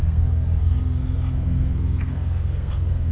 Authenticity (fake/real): fake